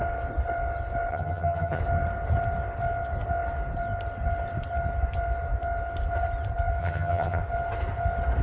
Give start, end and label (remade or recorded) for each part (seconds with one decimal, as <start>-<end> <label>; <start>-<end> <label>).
0.0-1.1 recorded; 1.1-1.8 remade; 1.8-6.8 recorded; 6.8-7.4 remade; 7.4-8.4 recorded